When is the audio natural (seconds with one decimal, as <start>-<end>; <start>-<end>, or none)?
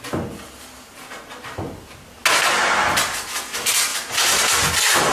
0.0-5.1